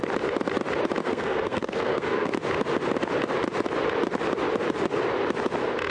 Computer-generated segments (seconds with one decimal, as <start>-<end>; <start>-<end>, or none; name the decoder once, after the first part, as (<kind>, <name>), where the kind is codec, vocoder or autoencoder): 1.0-2.3 (codec, SNAC)